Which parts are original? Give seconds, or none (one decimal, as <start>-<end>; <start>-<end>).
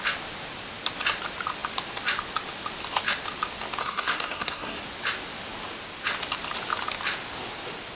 0.0-3.8; 4.8-7.9